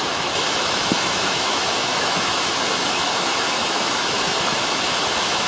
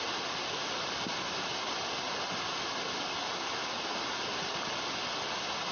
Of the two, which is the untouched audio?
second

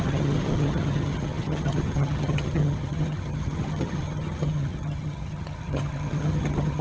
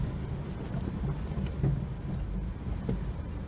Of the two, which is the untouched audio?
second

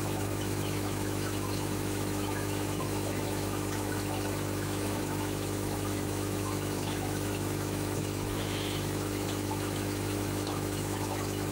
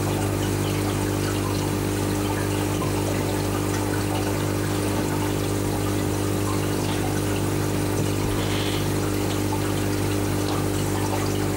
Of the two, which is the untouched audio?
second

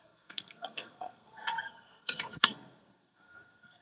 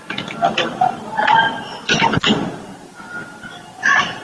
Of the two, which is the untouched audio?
second